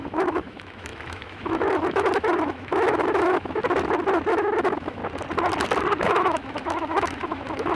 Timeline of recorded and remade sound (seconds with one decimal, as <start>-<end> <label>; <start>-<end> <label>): 0.0-3.6 remade; 3.6-4.3 recorded; 4.3-5.0 remade; 5.0-6.0 recorded; 6.0-7.8 remade